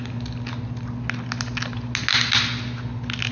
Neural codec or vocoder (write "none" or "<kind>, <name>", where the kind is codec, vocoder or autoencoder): none